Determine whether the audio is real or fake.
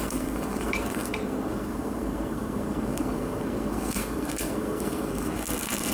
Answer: fake